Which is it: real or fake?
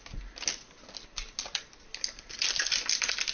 real